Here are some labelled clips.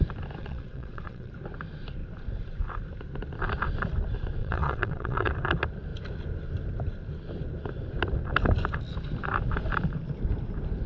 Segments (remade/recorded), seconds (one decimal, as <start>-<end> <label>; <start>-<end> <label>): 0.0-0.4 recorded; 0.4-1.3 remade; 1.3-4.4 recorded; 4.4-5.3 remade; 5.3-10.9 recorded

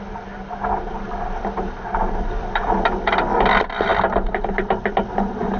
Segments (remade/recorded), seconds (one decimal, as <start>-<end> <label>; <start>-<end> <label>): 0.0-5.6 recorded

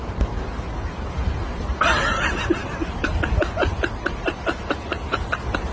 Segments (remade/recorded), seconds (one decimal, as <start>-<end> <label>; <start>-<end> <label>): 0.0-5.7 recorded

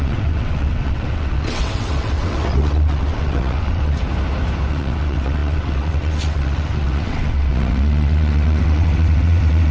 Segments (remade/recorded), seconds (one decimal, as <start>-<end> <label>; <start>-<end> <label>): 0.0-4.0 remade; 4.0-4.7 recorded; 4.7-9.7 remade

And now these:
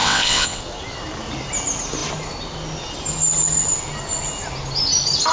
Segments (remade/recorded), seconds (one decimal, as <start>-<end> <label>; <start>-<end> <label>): 0.0-0.6 remade; 0.6-5.3 recorded